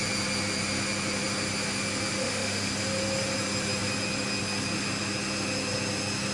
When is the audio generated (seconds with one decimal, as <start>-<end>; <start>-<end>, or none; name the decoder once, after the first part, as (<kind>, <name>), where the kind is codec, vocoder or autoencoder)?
2.2-2.7 (autoencoder, DAC-VAE)